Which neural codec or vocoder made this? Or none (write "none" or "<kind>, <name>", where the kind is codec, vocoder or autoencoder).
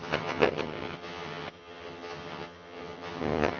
vocoder, HiFi-GAN